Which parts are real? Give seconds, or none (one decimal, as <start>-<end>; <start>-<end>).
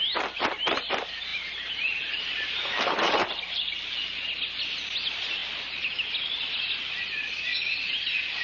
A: 0.0-1.3; 3.3-8.4